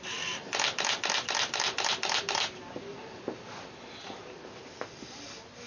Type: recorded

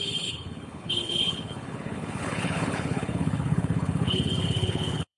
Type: remade